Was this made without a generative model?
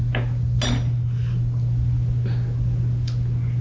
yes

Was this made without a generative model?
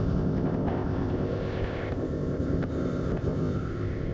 no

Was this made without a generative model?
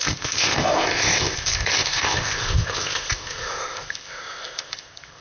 no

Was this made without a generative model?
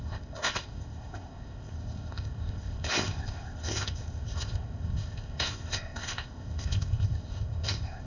no